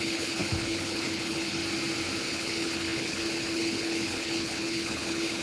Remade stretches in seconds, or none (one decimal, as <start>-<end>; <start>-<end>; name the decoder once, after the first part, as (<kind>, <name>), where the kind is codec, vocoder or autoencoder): 0.0-1.6 (codec, HILCodec); 2.2-5.4